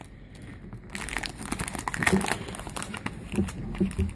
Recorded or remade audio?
recorded